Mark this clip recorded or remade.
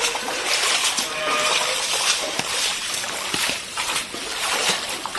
remade